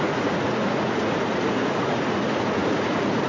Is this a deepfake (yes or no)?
yes